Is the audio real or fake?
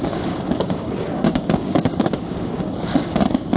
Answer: fake